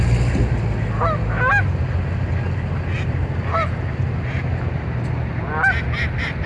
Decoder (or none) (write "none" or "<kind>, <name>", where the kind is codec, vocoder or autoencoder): none